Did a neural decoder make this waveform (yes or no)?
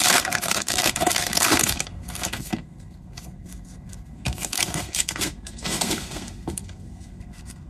yes